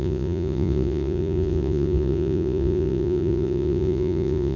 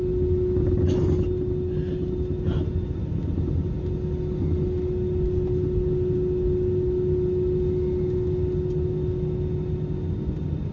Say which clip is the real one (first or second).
second